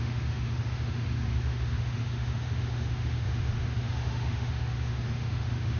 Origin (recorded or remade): remade